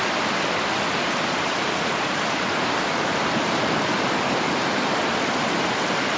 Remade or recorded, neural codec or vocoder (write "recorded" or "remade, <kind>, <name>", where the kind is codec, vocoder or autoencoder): recorded